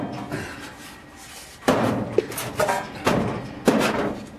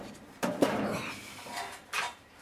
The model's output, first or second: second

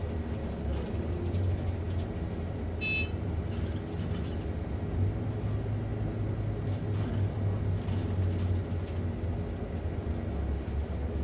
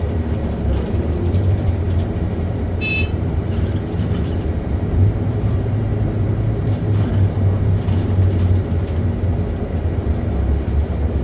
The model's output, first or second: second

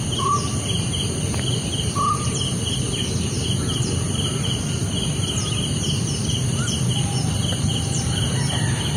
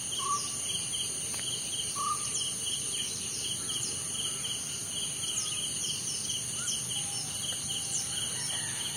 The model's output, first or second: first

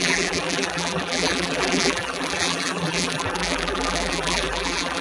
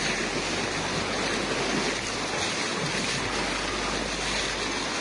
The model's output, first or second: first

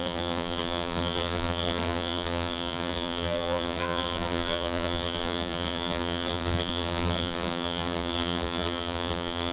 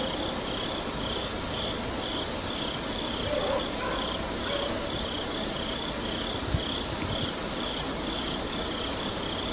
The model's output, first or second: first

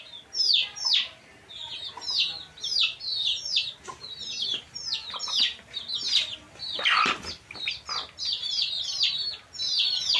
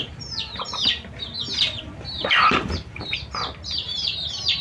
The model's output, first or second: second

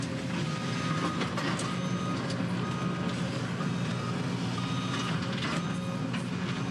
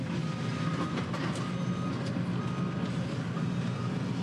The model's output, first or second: second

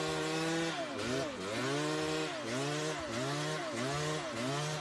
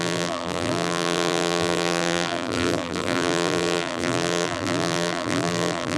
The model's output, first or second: second